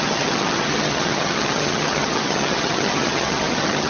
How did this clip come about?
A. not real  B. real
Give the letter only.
A